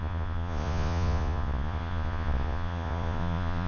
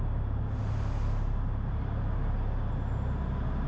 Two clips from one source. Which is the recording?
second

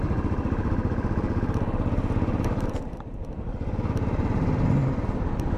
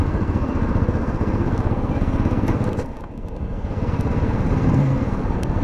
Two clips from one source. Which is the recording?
first